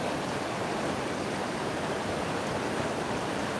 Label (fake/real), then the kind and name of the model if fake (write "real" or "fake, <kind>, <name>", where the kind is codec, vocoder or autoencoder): real